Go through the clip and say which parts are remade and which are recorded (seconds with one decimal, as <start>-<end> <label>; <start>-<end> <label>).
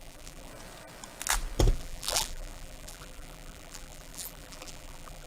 0.0-0.5 remade; 0.5-1.7 recorded; 1.7-5.3 remade